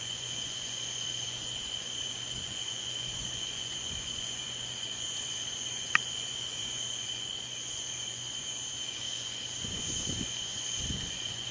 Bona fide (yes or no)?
no